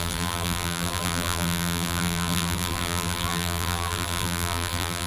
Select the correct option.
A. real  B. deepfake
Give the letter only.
B